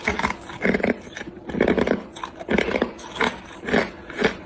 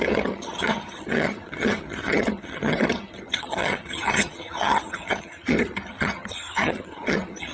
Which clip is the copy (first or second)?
second